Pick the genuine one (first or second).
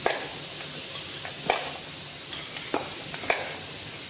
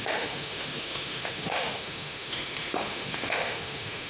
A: first